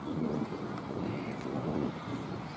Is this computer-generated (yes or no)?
yes